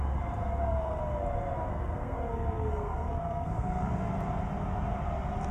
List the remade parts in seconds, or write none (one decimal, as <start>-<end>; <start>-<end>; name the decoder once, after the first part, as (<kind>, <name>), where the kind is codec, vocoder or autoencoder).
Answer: 0.4-1.0 (codec, SNAC); 1.7-3.9